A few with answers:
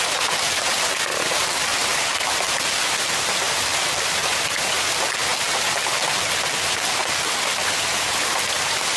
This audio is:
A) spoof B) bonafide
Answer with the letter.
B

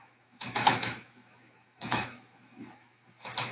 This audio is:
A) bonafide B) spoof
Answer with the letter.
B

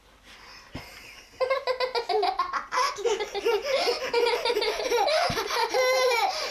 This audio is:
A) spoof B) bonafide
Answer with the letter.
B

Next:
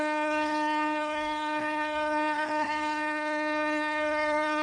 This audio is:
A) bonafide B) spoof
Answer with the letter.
B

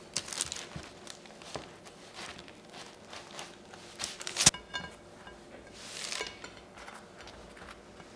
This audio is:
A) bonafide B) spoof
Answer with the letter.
A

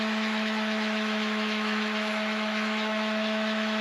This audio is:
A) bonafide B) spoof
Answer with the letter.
B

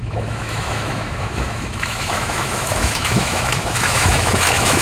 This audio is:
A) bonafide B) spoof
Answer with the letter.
B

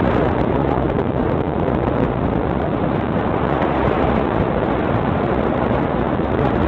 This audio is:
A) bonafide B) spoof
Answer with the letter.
B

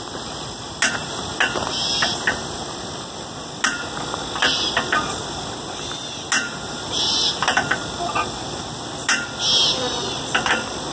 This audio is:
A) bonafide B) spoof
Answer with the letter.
A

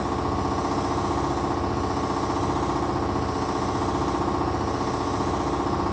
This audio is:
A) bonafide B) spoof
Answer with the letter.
A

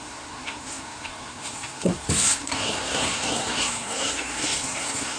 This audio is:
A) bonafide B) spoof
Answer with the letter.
B